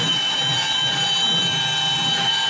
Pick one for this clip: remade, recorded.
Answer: remade